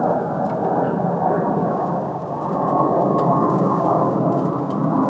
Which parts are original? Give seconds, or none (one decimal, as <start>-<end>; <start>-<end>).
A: 0.0-1.6; 4.3-5.1